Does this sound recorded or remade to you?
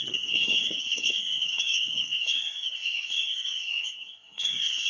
remade